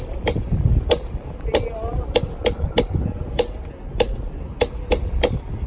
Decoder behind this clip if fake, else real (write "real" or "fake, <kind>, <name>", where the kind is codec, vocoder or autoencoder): real